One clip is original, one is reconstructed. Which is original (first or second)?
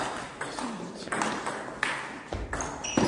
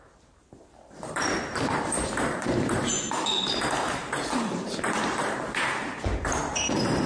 first